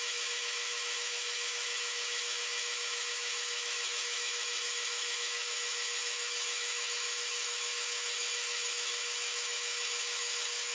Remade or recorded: remade